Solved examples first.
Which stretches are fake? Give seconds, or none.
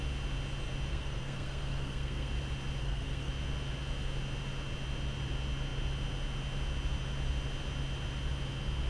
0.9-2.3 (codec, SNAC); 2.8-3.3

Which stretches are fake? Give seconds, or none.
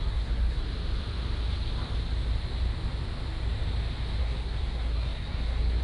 0.0-0.7 (codec, SNAC); 4.2-5.8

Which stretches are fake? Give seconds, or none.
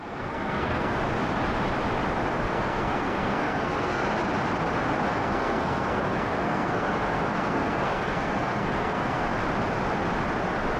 0.0-1.0 (codec, SNAC); 2.4-4.0; 5.1-9.3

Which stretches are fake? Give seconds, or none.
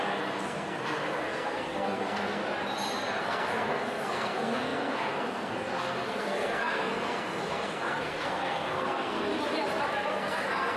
0.0-2.4 (codec, SNAC); 3.2-9.3; 9.9-10.8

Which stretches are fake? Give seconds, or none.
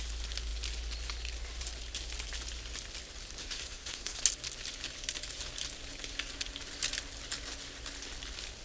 3.4-4.2 (codec, SNAC)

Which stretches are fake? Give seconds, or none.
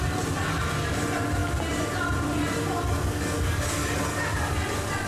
none